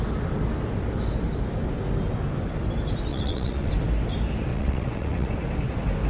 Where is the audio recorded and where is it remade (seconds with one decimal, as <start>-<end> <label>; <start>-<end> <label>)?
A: 0.0-3.1 recorded; 3.1-3.7 remade; 3.7-4.5 recorded; 4.5-5.3 remade; 5.3-6.1 recorded